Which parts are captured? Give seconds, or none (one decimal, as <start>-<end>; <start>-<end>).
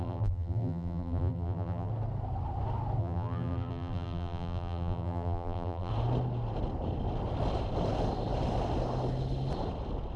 1.9-3.0; 5.9-10.2